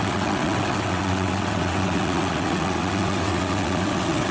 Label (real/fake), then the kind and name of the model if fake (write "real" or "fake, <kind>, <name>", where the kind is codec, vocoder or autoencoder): fake, vocoder, WaveNeXt